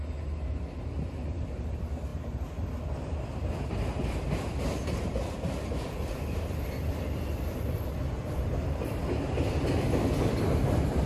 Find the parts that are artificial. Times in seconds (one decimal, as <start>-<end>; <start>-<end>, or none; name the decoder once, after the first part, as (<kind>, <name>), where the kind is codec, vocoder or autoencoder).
0.0-11.1 (vocoder, BigVGAN v2)